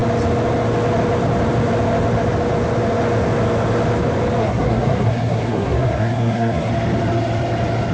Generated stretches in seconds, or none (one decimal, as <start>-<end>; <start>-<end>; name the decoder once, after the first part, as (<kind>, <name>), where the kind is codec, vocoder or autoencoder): 4.4-6.7 (codec, SNAC)